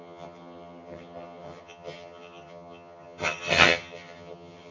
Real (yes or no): no